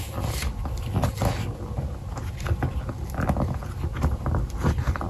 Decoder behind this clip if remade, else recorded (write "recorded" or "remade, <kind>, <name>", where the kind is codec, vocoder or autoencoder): recorded